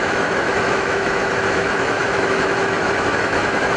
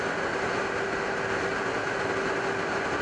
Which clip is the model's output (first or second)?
first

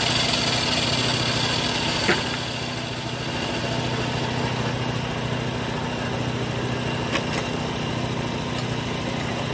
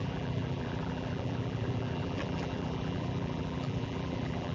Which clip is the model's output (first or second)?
second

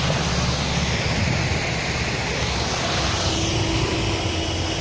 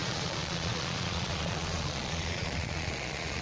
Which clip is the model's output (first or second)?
second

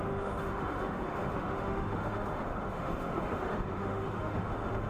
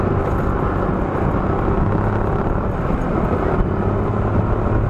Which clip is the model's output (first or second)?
first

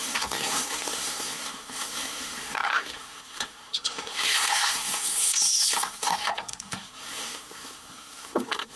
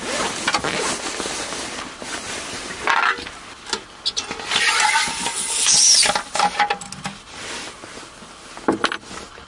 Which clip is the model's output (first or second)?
first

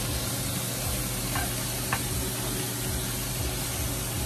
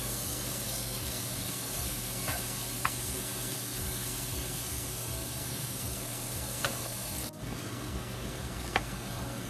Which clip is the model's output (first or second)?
second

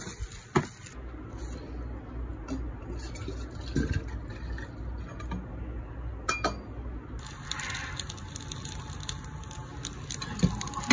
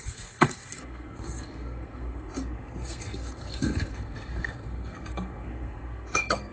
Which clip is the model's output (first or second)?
second